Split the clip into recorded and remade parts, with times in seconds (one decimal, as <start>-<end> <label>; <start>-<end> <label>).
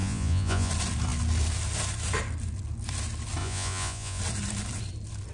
0.0-0.7 remade; 0.7-3.4 recorded; 3.4-4.2 remade; 4.2-5.3 recorded